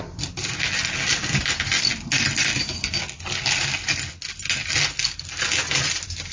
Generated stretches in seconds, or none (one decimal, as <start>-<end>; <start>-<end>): none